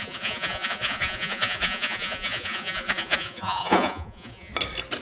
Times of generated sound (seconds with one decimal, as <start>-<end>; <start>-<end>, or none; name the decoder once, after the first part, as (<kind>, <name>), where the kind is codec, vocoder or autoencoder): 0.0-4.5 (vocoder, Vocos)